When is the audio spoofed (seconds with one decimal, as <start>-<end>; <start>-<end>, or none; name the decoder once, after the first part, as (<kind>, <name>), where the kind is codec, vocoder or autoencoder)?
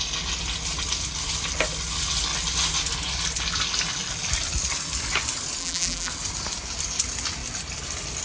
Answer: 5.6-6.1 (vocoder, BigVGAN v2)